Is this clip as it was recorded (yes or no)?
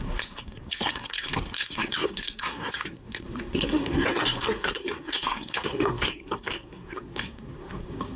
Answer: no